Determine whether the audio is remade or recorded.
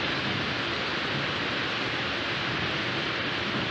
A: recorded